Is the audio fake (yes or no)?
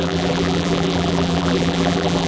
yes